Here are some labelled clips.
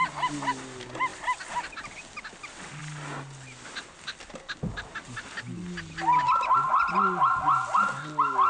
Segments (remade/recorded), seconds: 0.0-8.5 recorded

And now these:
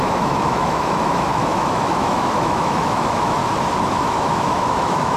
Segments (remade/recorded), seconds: 0.0-3.4 remade; 3.4-3.9 recorded; 3.9-5.2 remade

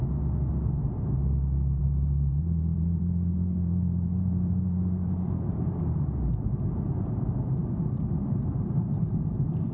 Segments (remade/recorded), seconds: 0.0-1.8 recorded; 1.8-9.7 remade

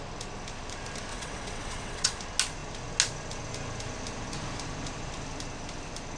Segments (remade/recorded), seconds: 0.0-1.1 recorded; 1.1-2.2 remade; 2.2-6.2 recorded

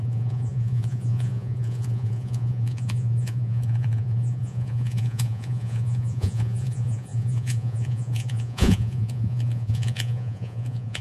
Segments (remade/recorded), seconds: 0.0-11.0 remade